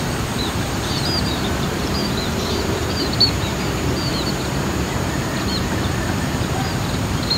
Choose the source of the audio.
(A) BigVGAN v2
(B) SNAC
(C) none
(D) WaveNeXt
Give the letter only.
A